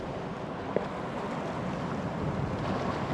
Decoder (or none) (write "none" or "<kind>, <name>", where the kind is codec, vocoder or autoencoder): none